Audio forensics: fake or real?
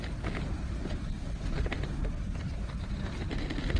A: real